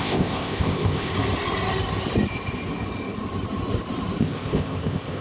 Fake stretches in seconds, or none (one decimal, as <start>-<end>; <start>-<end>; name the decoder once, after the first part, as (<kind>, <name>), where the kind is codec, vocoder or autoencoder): 0.0-1.1 (codec, ZipCodec); 4.2-5.2